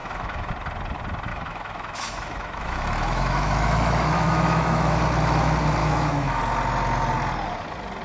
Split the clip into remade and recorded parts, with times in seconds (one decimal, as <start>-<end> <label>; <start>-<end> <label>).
0.0-0.5 remade; 0.5-1.3 recorded; 1.3-5.0 remade; 5.0-5.8 recorded; 5.8-6.4 remade; 6.4-8.0 recorded